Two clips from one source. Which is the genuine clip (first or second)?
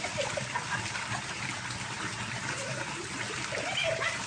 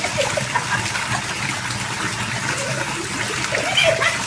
second